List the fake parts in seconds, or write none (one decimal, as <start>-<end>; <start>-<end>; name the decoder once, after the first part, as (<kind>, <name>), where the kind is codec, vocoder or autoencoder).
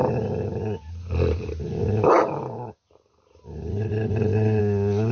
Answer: 3.7-4.6 (codec, HILCodec)